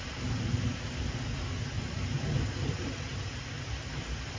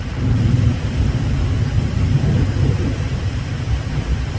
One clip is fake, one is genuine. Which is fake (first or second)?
second